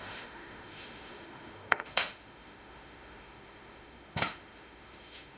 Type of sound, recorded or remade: remade